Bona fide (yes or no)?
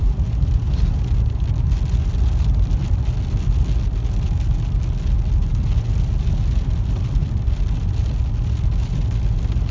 yes